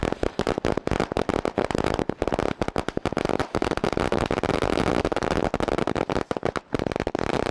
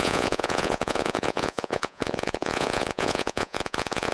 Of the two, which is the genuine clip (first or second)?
first